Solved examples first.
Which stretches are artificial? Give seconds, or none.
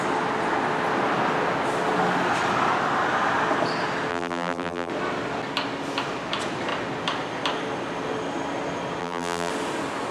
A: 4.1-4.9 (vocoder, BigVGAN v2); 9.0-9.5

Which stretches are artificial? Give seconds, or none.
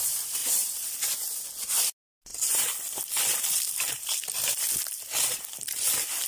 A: 0.4-1.4 (vocoder, BigVGAN v2); 2.3-6.3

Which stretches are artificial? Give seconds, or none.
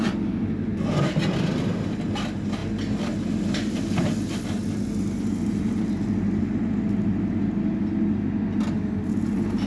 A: none